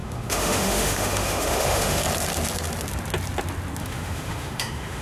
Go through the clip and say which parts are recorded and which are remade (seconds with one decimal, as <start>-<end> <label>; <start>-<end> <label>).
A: 0.0-2.0 remade; 2.0-3.8 recorded; 3.8-5.0 remade